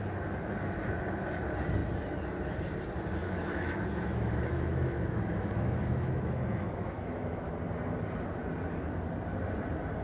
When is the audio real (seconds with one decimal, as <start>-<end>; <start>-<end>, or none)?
0.0-3.2; 7.5-10.0